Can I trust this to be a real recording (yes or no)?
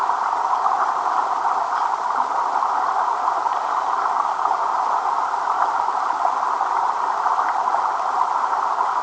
yes